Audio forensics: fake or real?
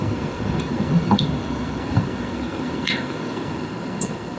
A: fake